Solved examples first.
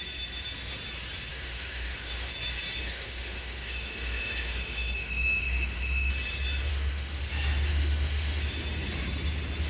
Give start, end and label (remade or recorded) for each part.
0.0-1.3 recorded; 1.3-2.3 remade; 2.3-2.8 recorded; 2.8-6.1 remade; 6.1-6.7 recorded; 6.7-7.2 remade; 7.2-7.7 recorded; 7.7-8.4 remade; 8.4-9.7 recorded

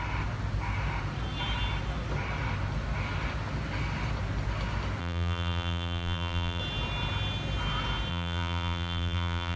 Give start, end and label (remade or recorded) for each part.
0.0-5.0 recorded; 5.0-6.6 remade; 6.6-8.1 recorded; 8.1-9.6 remade

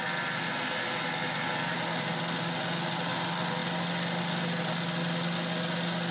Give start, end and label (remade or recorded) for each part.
0.0-6.1 recorded

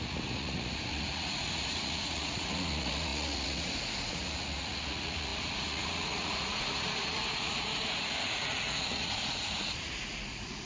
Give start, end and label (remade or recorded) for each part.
0.0-10.7 remade

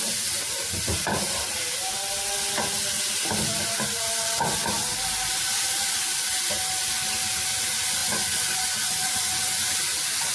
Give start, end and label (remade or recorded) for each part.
0.0-8.0 recorded; 8.0-9.7 remade; 9.7-10.3 recorded

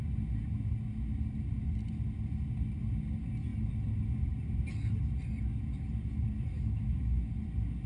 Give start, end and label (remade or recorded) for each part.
0.0-6.5 recorded; 6.5-7.3 remade; 7.3-7.9 recorded

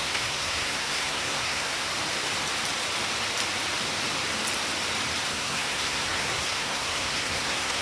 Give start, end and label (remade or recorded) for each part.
0.0-1.9 remade; 1.9-5.3 recorded; 5.3-7.8 remade

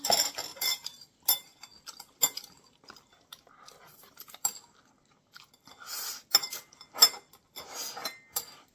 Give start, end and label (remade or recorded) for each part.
0.0-4.0 recorded; 4.0-4.5 remade; 4.5-8.7 recorded